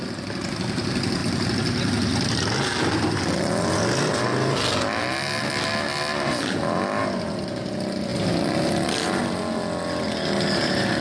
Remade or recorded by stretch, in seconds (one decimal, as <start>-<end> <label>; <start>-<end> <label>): 0.0-11.0 recorded